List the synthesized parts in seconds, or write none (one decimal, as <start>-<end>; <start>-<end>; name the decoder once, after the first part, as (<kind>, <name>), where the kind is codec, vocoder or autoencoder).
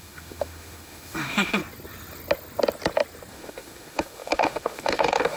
0.0-1.6 (autoencoder, DAC-VAE); 3.3-5.4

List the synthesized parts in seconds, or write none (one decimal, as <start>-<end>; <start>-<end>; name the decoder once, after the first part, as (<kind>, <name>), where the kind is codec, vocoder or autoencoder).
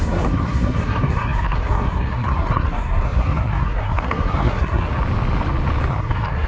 0.0-4.9 (codec, SNAC); 5.9-6.5